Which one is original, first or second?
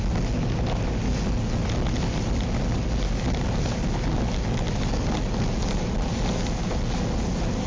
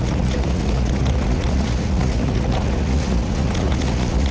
first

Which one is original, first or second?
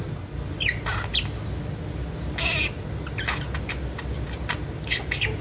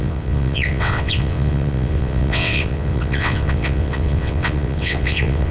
first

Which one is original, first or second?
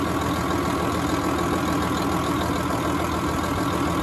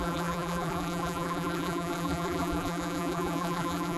first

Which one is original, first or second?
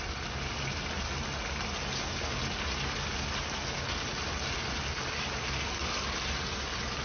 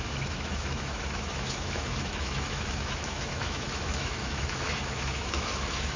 first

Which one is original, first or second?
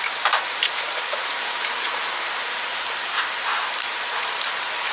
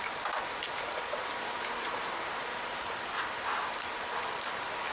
second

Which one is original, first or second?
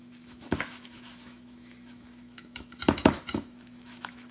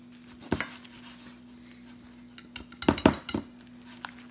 second